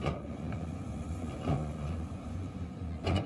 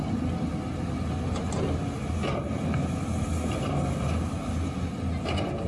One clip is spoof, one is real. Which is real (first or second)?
second